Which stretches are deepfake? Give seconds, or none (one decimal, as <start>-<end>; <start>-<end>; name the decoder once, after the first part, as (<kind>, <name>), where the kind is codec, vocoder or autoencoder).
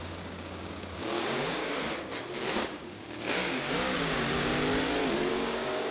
0.0-1.6 (codec, DAC); 2.5-4.5; 5.3-5.9